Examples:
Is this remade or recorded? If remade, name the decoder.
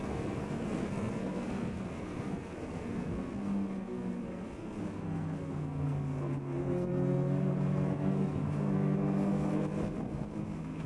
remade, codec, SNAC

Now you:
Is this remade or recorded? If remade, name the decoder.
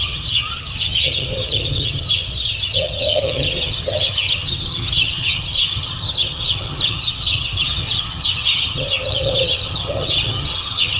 remade, vocoder, HiFi-GAN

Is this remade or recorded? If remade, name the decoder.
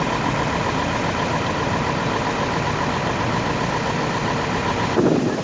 recorded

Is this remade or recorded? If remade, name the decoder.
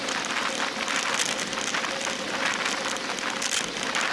recorded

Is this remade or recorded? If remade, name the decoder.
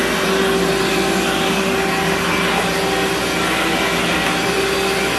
recorded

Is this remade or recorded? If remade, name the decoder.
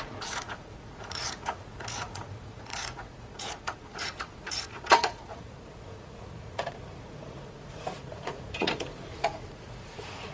remade, vocoder, Vocos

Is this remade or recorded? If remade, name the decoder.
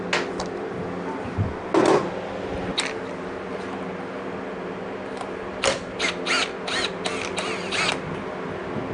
recorded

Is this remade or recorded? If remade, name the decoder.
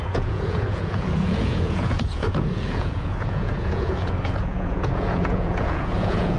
remade, vocoder, Vocos